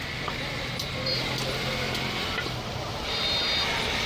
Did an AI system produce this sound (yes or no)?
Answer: no